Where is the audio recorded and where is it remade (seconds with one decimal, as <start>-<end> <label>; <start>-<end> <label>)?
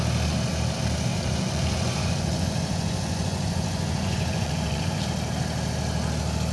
0.0-1.1 recorded; 1.1-5.0 remade; 5.0-6.5 recorded